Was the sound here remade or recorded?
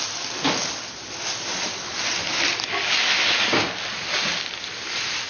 recorded